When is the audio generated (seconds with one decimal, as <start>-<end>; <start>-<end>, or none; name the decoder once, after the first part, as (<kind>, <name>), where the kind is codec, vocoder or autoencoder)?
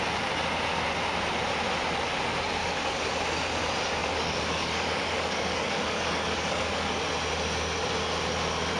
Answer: 2.6-3.1 (codec, DAC); 4.0-7.1